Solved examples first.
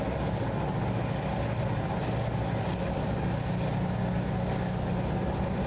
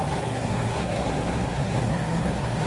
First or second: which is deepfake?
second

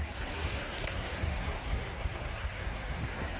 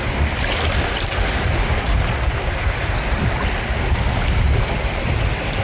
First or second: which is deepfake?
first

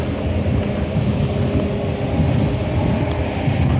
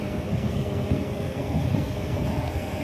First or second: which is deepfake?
second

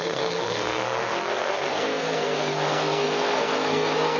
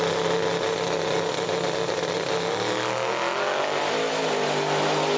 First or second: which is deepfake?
first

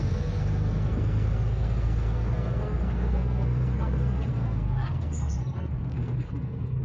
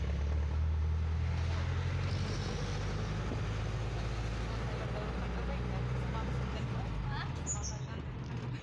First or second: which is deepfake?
first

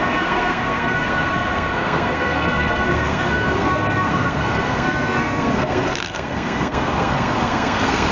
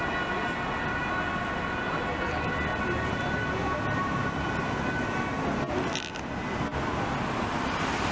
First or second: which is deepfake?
first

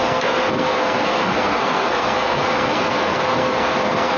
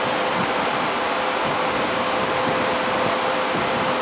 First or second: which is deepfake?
first